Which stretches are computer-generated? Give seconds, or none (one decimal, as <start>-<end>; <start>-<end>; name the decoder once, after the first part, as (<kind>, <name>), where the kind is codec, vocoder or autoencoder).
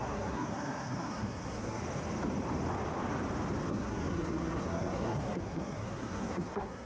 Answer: 0.0-1.8 (codec, SNAC); 3.7-6.9